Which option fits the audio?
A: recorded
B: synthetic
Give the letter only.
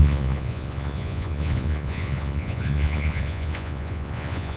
B